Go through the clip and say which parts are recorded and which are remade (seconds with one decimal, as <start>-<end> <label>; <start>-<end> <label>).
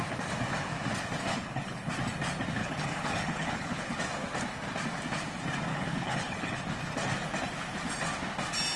0.0-1.3 recorded; 1.3-1.9 remade; 1.9-2.6 recorded; 2.6-4.0 remade; 4.0-5.7 recorded; 5.7-6.6 remade; 6.6-8.8 recorded